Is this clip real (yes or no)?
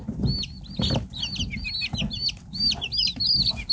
yes